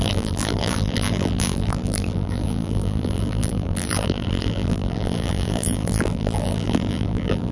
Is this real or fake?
fake